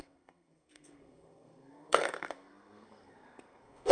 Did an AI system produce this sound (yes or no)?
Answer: yes